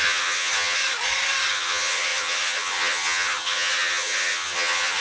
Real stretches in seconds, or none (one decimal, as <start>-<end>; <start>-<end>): 0.8-1.5

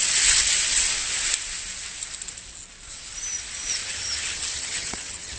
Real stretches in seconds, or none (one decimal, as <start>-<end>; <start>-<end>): 0.0-3.8

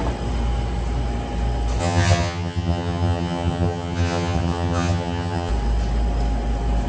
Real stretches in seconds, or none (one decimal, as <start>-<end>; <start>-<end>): 0.0-1.8; 5.5-6.9

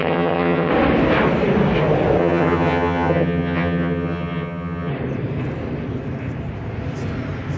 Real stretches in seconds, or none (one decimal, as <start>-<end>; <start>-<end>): 0.7-2.2; 4.9-7.6

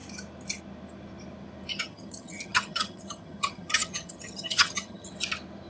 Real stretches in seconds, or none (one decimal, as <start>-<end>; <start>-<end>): 0.0-1.7; 5.1-5.7

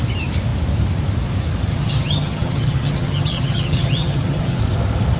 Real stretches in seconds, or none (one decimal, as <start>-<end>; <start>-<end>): 0.0-1.7; 4.6-5.2

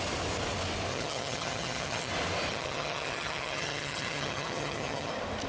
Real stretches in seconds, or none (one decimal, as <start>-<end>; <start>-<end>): 0.0-0.9; 2.1-2.5; 5.1-5.5